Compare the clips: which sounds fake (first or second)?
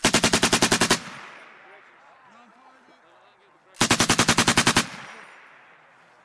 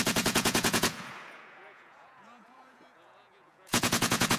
second